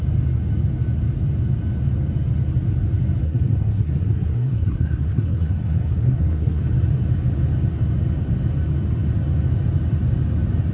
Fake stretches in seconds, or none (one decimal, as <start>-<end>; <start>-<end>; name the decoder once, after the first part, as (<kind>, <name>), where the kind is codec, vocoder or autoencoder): 3.2-6.6 (codec, SNAC)